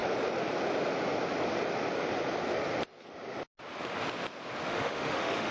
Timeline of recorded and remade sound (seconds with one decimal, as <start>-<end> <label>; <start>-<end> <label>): 0.0-4.7 recorded; 4.7-5.5 remade